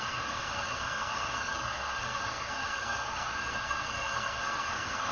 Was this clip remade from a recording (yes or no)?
yes